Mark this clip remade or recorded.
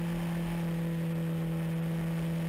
recorded